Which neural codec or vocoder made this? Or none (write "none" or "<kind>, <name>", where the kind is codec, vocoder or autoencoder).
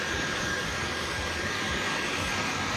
codec, DAC